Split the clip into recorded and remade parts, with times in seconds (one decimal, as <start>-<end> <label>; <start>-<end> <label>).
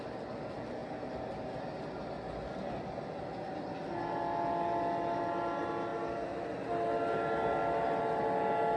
0.0-8.8 recorded